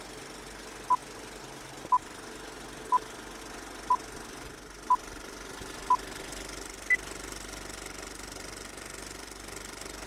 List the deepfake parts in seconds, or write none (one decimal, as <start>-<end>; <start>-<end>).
none